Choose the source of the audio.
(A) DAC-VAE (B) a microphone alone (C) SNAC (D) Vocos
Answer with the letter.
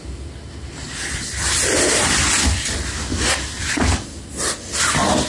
B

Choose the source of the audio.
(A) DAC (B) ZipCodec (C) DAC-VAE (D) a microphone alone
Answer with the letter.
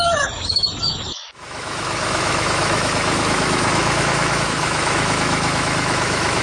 C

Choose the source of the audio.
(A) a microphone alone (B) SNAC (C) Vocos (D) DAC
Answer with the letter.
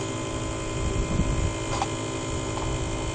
A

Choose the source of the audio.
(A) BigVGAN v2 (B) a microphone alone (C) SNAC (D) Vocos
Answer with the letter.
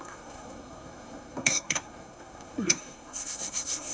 C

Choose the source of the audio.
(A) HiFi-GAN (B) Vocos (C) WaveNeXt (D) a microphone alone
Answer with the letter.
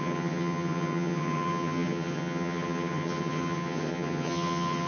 A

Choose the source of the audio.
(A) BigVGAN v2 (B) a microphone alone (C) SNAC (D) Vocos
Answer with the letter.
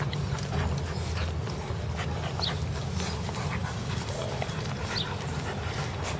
B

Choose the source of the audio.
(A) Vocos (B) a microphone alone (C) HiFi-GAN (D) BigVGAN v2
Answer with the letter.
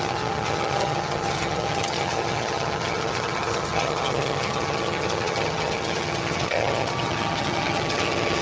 C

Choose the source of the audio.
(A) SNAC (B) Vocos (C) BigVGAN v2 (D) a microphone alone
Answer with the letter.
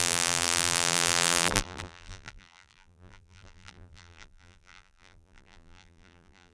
C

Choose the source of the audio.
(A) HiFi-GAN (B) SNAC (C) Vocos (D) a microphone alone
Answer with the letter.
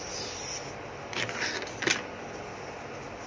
D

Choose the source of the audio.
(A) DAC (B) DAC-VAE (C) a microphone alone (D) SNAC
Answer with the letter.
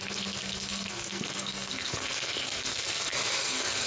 D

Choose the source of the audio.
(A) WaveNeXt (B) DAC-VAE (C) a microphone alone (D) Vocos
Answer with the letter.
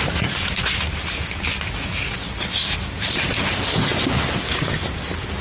C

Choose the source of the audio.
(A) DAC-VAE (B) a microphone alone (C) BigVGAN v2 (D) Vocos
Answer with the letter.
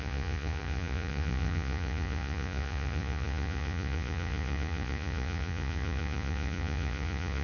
D